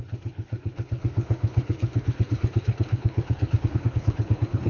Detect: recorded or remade remade